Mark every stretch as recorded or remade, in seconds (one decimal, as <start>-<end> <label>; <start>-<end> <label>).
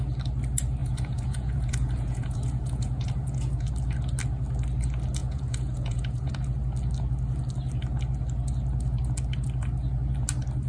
0.0-0.8 recorded; 0.8-3.7 remade; 3.7-5.2 recorded; 5.2-6.3 remade; 6.3-10.7 recorded